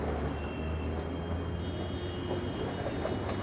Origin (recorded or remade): recorded